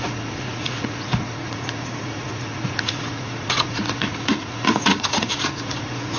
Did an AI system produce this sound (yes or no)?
yes